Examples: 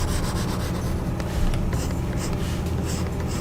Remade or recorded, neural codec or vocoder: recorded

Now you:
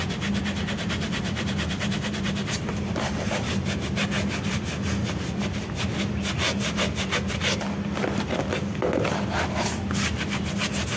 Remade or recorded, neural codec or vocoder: recorded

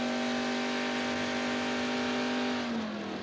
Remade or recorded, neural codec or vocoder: recorded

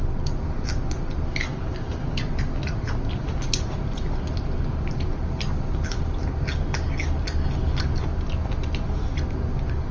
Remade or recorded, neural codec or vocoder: recorded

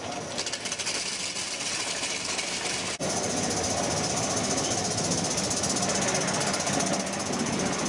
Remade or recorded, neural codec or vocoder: recorded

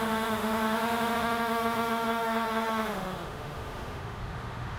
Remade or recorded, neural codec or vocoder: remade, autoencoder, DAC-VAE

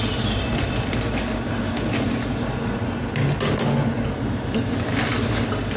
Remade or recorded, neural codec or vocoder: recorded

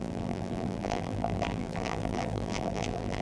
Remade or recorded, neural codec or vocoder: remade, vocoder, BigVGAN v2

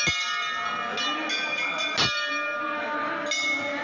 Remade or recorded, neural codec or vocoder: recorded